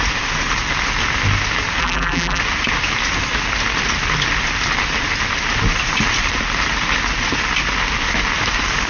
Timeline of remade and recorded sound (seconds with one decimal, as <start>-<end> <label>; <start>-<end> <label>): 0.0-1.8 recorded; 1.8-2.4 remade; 2.4-8.9 recorded